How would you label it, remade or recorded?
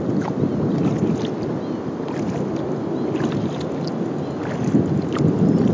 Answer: recorded